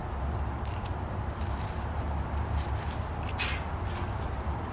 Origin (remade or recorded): recorded